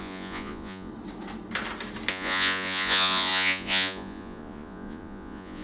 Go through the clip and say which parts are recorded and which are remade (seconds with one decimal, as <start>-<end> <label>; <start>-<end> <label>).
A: 0.0-0.9 remade; 0.9-2.1 recorded; 2.1-5.6 remade